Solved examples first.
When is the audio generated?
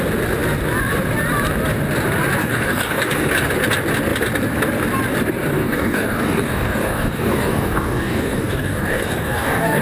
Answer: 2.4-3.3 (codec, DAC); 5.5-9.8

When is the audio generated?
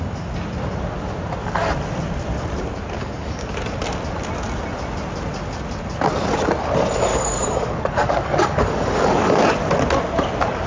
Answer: 3.0-3.5 (codec, DAC); 7.1-9.4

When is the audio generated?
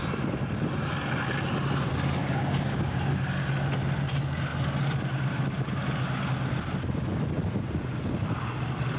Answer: 2.2-3.2 (codec, DAC)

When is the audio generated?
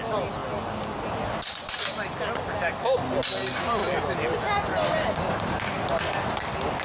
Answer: none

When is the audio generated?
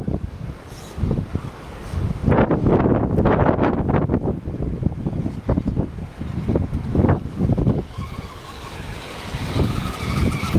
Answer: 0.0-2.2 (codec, DAC); 6.8-10.6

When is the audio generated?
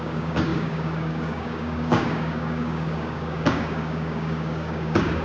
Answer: 0.0-5.2 (codec, DAC)